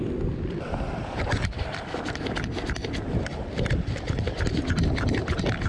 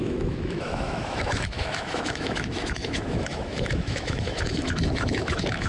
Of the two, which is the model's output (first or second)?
second